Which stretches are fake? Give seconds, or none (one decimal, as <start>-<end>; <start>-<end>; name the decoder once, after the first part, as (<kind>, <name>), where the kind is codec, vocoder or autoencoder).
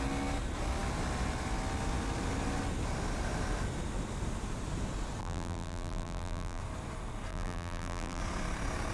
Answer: 5.2-6.6 (vocoder, BigVGAN v2); 7.3-8.2